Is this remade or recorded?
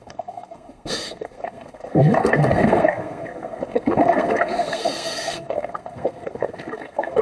remade